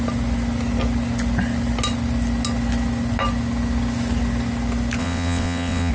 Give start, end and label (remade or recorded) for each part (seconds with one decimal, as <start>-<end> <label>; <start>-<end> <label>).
0.0-5.0 recorded; 5.0-5.9 remade